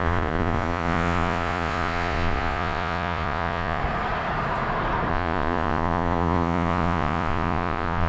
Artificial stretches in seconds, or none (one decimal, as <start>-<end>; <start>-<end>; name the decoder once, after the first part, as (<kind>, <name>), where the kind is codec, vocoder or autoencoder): 0.0-3.8 (vocoder, Vocos); 5.1-8.1